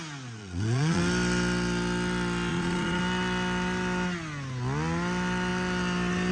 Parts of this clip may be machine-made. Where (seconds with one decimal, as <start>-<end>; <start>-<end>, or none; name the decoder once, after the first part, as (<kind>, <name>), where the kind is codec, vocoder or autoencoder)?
0.4-1.0 (vocoder, Vocos); 2.5-3.0